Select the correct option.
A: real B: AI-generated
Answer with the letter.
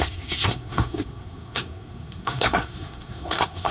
B